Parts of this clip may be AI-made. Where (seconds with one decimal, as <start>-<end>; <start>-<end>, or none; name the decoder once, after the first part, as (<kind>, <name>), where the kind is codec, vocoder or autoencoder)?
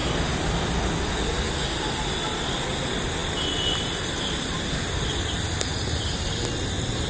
none